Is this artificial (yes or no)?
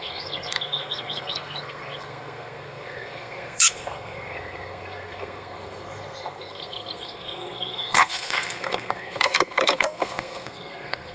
yes